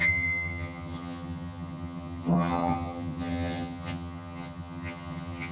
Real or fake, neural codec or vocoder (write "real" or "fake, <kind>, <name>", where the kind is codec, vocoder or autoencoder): fake, vocoder, HiFi-GAN